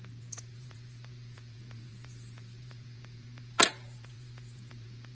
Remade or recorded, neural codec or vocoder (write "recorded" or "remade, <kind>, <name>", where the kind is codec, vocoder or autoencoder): remade, vocoder, Vocos